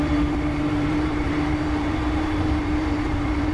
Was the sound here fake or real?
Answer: fake